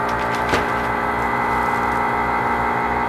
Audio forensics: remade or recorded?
recorded